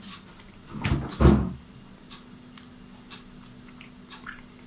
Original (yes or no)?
yes